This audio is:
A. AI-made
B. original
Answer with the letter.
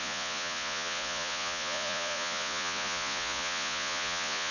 A